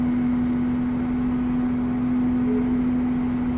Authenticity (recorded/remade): recorded